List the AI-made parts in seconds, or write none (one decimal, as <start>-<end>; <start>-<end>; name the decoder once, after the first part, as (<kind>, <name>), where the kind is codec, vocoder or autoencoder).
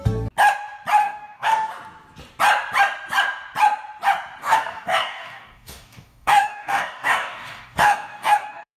1.0-1.7 (codec, DAC); 4.4-8.8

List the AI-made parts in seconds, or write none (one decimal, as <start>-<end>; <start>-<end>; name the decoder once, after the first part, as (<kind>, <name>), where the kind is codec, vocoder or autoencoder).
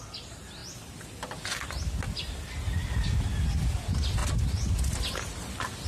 0.6-1.8 (vocoder, BigVGAN v2); 4.2-5.9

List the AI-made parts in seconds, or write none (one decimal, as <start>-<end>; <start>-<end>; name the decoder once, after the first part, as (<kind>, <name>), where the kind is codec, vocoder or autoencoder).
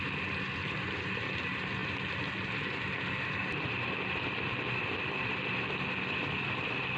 none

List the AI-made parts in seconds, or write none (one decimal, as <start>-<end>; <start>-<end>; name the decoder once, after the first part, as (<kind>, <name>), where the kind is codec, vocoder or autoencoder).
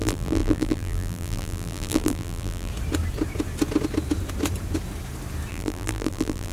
0.0-2.7 (vocoder, BigVGAN v2); 5.5-6.5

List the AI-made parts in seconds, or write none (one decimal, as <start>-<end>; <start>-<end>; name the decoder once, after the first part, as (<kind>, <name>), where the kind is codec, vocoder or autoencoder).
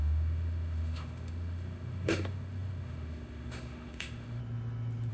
0.0-4.4 (autoencoder, DAC-VAE)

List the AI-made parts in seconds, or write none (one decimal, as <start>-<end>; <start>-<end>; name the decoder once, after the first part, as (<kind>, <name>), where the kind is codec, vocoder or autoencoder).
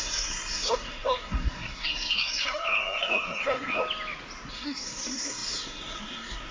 0.0-3.8 (codec, SNAC); 4.5-6.5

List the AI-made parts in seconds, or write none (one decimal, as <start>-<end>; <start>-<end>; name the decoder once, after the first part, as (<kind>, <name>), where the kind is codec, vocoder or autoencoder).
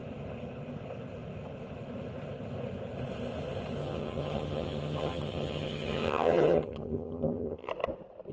3.8-7.7 (vocoder, HiFi-GAN)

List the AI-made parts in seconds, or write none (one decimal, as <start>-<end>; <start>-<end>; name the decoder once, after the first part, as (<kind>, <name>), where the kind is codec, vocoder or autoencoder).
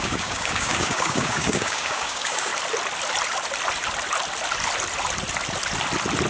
0.0-2.5 (codec, DAC)